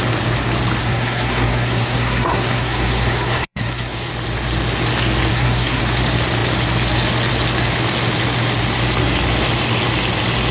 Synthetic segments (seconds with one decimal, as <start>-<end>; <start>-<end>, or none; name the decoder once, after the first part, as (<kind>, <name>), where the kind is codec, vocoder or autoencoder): 0.8-4.1 (codec, SNAC); 5.3-5.8